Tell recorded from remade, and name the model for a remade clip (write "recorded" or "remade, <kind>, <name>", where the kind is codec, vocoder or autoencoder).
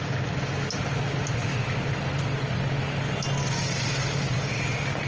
recorded